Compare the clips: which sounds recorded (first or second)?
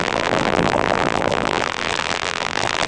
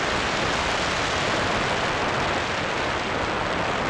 second